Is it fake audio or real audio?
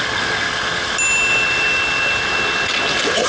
real